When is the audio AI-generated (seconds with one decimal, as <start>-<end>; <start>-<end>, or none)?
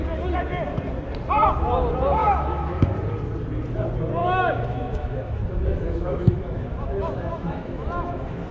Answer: 2.2-2.9; 4.2-8.5